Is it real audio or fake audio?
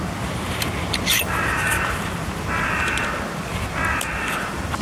real